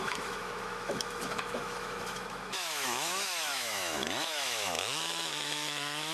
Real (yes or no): no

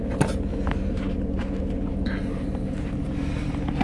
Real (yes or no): yes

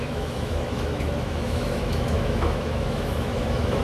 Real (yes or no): no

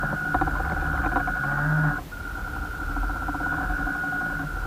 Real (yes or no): yes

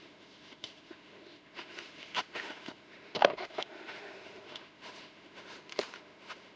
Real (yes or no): no